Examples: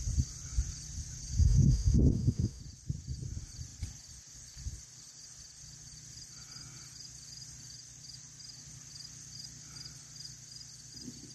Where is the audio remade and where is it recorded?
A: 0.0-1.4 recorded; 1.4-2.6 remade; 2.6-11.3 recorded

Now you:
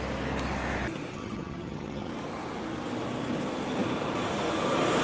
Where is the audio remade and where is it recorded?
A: 0.0-1.1 recorded; 1.1-2.1 remade; 2.1-5.0 recorded

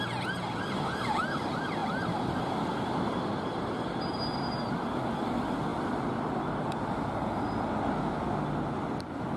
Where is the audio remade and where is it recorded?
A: 0.0-9.4 recorded

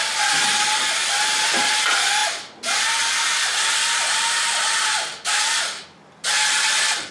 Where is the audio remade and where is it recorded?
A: 0.0-7.1 recorded

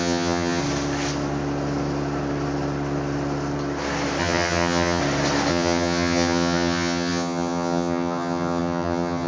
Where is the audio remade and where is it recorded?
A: 0.0-0.6 remade; 0.6-4.2 recorded; 4.2-5.0 remade; 5.0-5.5 recorded; 5.5-9.3 remade